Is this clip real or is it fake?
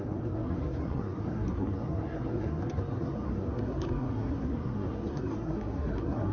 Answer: fake